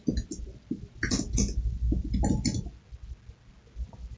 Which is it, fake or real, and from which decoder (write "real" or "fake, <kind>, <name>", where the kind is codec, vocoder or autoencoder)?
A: real